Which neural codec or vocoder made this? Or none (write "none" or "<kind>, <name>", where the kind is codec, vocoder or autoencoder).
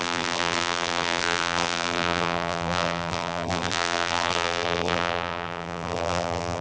vocoder, BigVGAN v2